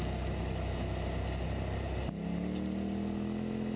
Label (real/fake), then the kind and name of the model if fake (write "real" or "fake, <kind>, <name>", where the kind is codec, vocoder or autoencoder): real